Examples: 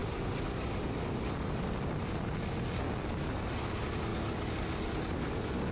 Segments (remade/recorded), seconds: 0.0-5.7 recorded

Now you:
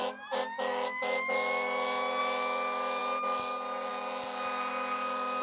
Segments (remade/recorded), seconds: 0.0-5.4 recorded

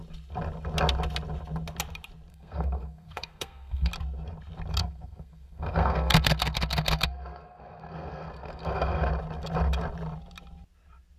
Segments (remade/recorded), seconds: 0.0-2.3 recorded; 2.3-3.9 remade; 3.9-4.8 recorded; 4.8-9.1 remade; 9.1-11.2 recorded

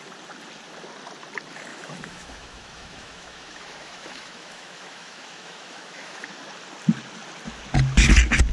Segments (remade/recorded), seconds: 0.0-1.7 recorded; 1.7-6.3 remade; 6.3-8.5 recorded

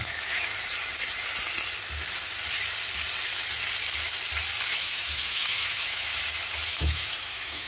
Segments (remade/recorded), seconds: 0.0-0.5 remade; 0.5-4.7 recorded; 4.7-6.1 remade; 6.1-6.7 recorded; 6.7-7.7 remade

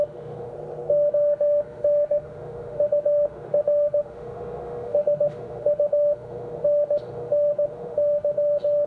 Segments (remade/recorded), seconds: 0.0-0.5 remade; 0.5-1.1 recorded; 1.1-8.9 remade

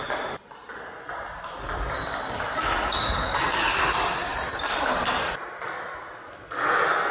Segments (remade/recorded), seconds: 0.0-7.1 recorded